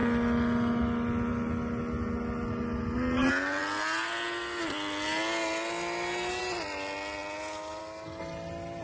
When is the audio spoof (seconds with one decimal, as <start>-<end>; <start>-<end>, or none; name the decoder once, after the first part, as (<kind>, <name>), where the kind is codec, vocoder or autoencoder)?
none